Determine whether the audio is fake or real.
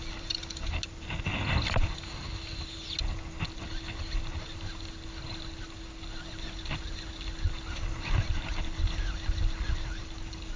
real